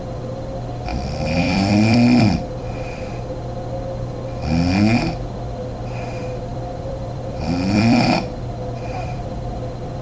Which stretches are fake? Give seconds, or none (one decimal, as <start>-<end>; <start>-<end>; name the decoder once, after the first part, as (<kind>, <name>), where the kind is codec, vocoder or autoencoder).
0.9-3.1 (vocoder, BigVGAN v2); 6.5-10.0